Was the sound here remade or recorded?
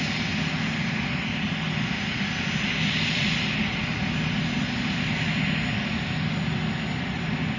recorded